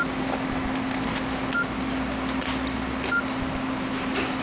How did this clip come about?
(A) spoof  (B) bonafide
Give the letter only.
B